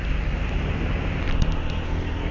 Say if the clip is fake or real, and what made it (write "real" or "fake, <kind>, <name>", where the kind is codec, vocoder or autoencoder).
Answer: real